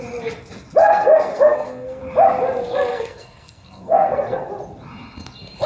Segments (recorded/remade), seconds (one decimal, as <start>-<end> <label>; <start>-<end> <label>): 0.0-0.8 recorded; 0.8-2.0 remade; 2.0-2.9 recorded; 2.9-4.5 remade; 4.5-5.7 recorded